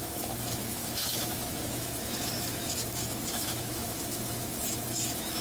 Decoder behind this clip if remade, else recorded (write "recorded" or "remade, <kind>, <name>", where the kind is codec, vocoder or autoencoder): remade, autoencoder, DAC-VAE